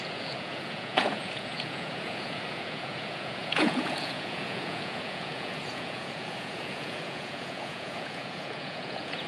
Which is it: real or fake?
fake